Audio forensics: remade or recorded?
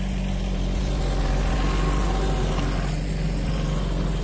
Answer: recorded